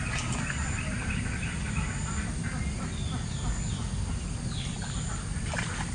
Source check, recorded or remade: recorded